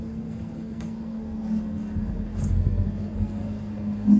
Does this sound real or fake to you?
fake